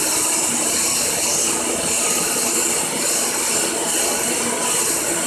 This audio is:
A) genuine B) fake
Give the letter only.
A